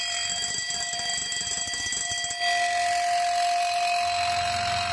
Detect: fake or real real